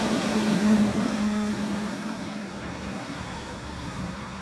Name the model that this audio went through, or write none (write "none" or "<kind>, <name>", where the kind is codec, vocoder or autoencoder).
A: codec, SNAC